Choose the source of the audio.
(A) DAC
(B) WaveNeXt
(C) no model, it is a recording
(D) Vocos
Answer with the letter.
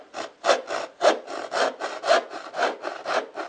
C